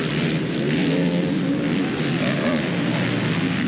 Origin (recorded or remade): recorded